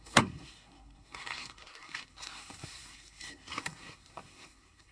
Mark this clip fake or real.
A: fake